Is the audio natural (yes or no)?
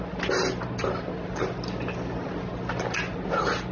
yes